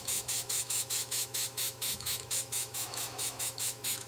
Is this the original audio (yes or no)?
no